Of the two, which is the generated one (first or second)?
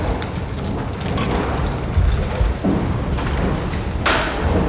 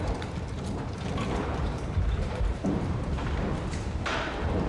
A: second